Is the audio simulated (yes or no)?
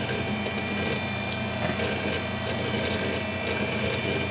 no